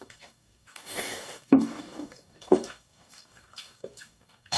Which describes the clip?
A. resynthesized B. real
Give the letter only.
A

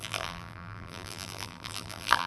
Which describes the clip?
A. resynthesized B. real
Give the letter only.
A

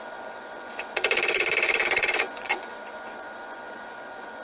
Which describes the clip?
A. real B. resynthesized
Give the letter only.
B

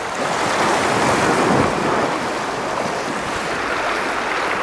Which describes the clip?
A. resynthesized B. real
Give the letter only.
B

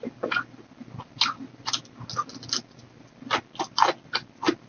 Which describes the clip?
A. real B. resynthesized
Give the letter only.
A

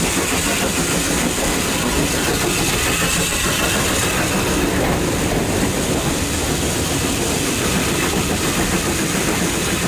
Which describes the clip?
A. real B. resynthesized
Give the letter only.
A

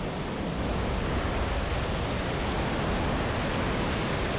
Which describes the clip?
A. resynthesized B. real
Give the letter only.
B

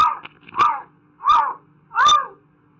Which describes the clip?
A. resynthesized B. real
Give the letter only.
B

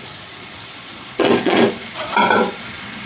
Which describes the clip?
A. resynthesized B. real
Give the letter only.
A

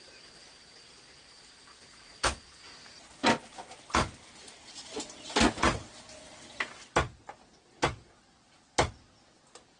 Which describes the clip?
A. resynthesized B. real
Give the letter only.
B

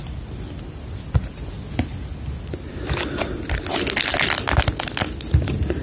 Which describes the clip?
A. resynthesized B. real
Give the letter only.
B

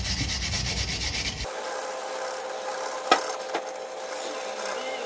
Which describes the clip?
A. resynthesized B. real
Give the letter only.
B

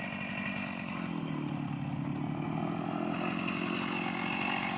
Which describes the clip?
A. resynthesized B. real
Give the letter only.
B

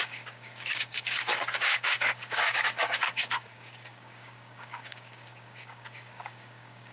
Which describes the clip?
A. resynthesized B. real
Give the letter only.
A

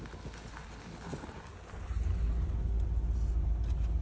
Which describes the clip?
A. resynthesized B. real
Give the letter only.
B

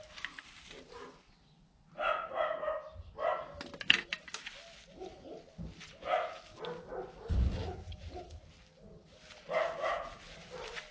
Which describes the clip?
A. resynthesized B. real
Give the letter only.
B